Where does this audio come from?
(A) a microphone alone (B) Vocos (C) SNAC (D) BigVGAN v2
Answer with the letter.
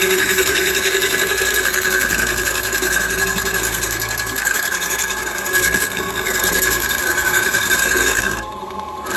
C